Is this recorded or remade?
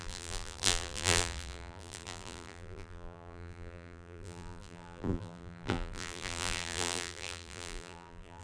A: remade